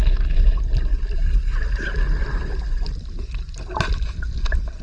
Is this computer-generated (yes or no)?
no